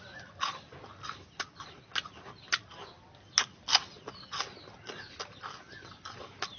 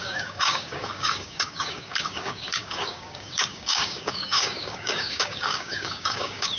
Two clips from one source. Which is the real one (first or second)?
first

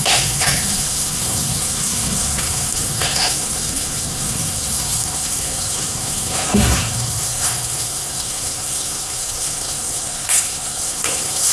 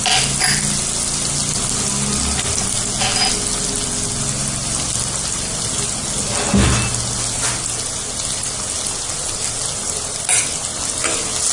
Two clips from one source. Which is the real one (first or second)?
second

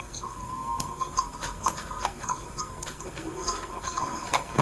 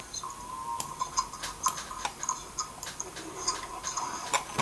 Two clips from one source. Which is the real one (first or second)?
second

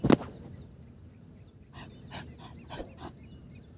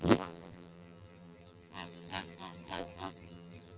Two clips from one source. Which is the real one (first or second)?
first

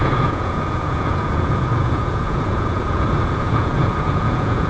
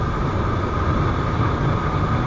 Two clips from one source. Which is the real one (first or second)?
second